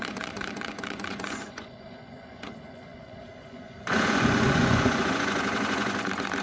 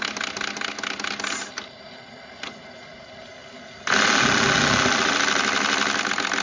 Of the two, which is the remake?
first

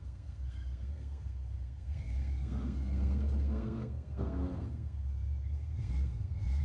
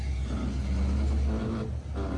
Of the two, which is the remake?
first